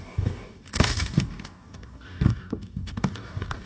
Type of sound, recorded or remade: remade